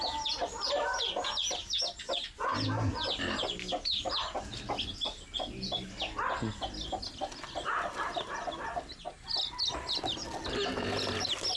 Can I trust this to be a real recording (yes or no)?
yes